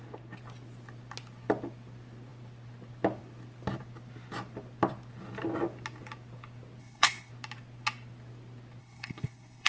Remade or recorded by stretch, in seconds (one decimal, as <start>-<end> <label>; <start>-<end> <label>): 0.0-6.8 recorded; 6.8-7.3 remade; 7.3-8.8 recorded; 8.8-9.7 remade